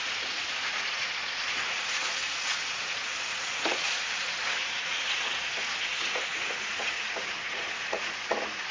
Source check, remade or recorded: remade